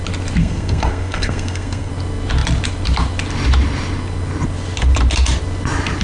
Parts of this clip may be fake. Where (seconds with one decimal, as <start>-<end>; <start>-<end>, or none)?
0.4-1.9